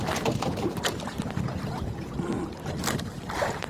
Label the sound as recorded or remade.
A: recorded